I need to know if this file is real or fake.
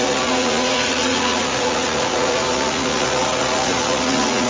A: fake